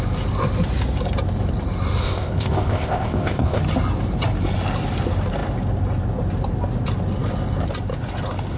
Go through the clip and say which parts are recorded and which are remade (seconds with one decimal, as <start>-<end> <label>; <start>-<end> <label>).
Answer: 0.0-2.0 recorded; 2.0-3.6 remade; 3.6-8.6 recorded